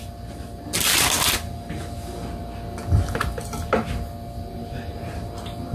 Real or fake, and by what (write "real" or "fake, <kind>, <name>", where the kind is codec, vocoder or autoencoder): real